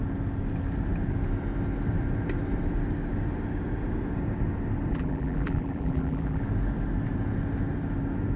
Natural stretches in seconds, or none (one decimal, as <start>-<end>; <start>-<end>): 0.0-4.9; 6.4-8.4